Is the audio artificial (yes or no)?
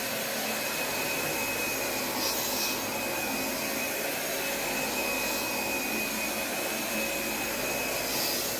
no